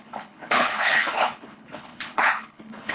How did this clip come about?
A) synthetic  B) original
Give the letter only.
A